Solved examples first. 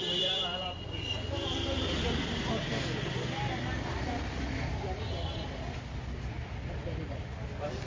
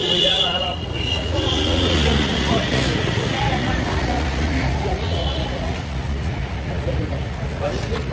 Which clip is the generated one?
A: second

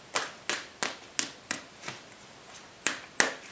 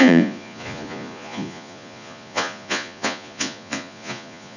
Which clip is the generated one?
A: second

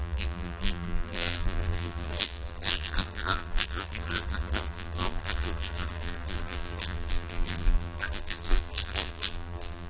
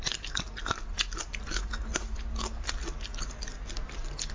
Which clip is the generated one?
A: first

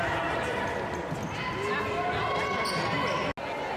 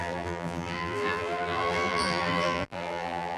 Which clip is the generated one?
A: second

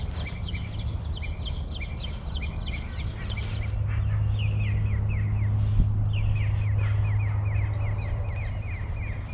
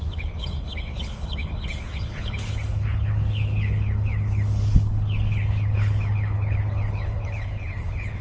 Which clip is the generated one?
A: second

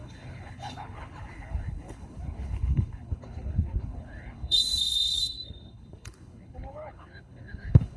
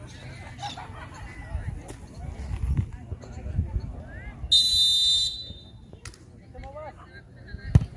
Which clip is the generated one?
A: first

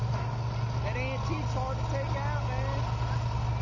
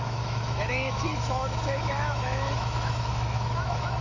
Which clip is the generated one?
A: second